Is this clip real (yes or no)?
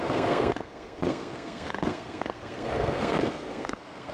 no